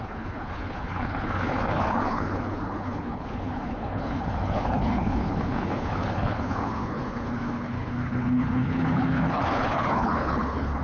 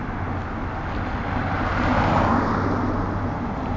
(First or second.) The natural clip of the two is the second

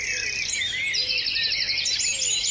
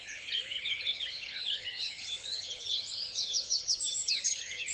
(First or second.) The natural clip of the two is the first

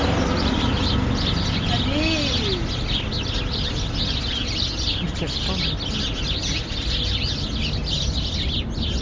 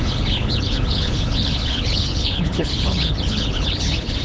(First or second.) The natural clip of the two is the first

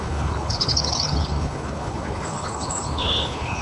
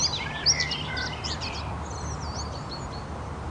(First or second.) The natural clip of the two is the second